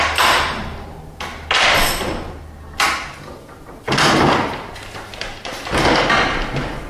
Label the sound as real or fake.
real